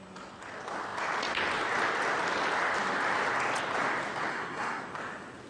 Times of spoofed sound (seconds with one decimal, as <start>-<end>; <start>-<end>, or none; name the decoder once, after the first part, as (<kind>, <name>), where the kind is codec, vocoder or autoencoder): 4.3-4.8 (codec, SNAC)